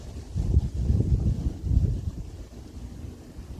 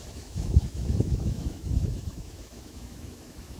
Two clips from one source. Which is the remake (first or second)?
second